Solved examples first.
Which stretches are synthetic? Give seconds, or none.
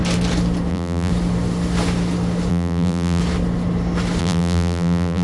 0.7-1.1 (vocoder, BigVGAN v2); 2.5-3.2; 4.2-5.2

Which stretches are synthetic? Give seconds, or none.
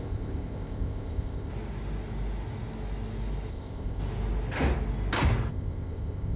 0.0-1.5 (codec, ZipCodec); 3.5-4.0; 5.5-6.4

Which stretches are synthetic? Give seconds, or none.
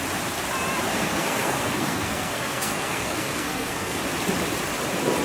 0.9-4.0 (codec, SNAC)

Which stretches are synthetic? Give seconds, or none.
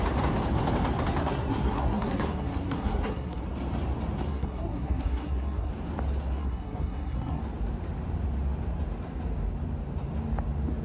1.2-3.4 (codec, SNAC); 4.3-5.7; 6.4-7.4